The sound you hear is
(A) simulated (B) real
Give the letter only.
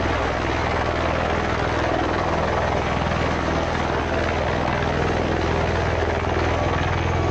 B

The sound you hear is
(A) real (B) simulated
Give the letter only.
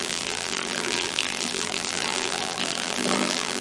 B